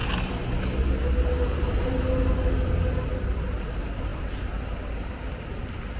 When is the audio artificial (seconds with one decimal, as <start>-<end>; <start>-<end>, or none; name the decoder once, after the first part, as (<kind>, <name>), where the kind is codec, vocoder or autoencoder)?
none